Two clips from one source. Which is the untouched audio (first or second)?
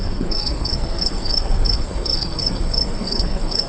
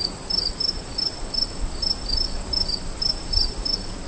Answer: second